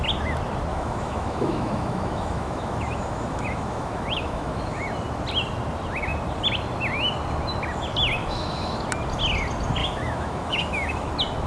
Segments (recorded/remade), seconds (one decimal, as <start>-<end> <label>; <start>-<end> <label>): 0.0-0.7 recorded; 0.7-4.8 remade; 4.8-8.2 recorded; 8.2-8.8 remade; 8.8-9.8 recorded; 9.8-11.1 remade; 11.1-11.5 recorded

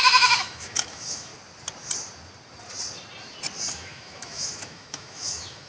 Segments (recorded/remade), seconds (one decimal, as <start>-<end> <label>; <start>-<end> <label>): 0.0-1.3 remade; 1.3-3.7 recorded; 3.7-5.7 remade

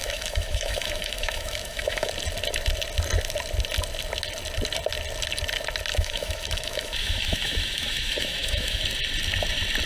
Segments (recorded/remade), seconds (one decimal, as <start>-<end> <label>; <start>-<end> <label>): 0.0-2.1 remade; 2.1-5.9 recorded; 5.9-8.8 remade; 8.8-9.9 recorded